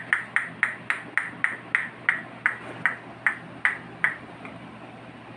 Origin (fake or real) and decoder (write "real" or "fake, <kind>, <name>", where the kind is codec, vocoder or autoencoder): real